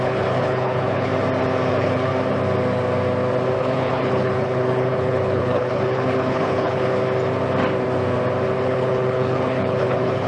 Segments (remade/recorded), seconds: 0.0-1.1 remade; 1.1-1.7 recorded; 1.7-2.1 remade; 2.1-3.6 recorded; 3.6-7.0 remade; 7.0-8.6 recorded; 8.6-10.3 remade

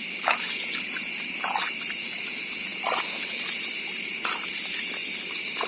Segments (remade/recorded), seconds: 0.0-5.7 recorded

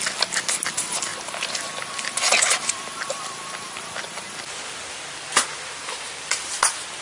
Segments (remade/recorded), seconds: 0.0-7.0 recorded